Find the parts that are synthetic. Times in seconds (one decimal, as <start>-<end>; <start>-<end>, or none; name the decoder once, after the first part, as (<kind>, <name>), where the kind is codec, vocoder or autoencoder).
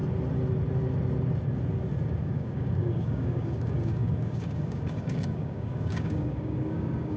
2.2-7.2 (codec, DAC)